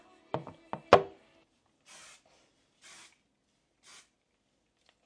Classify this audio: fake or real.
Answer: real